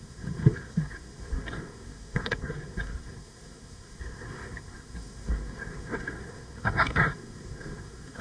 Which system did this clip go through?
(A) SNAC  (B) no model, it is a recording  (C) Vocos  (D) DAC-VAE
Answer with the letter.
A